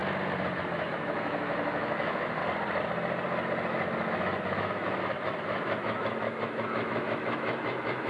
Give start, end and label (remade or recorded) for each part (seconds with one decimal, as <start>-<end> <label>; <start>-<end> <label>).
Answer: 0.0-0.6 recorded; 0.6-2.4 remade; 2.4-3.7 recorded; 3.7-8.1 remade